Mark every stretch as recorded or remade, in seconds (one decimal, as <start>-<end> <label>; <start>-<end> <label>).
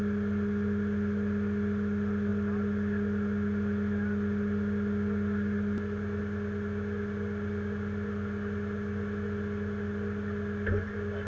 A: 0.0-11.3 recorded